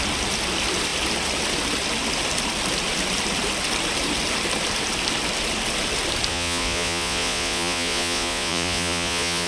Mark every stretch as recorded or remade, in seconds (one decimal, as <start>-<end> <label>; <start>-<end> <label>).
0.0-6.3 recorded; 6.3-9.5 remade